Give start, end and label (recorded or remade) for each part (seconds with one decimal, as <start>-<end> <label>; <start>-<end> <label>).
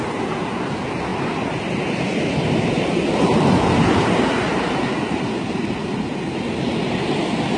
0.0-1.1 recorded; 1.1-5.4 remade; 5.4-7.6 recorded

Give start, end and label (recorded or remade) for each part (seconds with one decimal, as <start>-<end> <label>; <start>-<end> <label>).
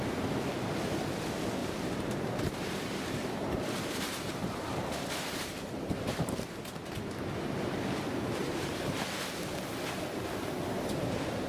0.0-1.6 recorded; 1.6-6.6 remade; 6.6-8.4 recorded; 8.4-9.0 remade; 9.0-11.5 recorded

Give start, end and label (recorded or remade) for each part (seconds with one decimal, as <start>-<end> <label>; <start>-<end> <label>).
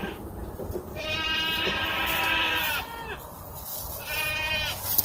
0.0-0.4 recorded; 0.4-3.2 remade; 3.2-3.7 recorded; 3.7-4.2 remade; 4.2-5.0 recorded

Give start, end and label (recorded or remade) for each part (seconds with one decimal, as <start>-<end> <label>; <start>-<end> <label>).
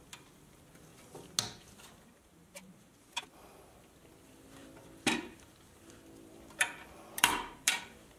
0.0-0.9 remade; 0.9-1.9 recorded; 1.9-8.2 remade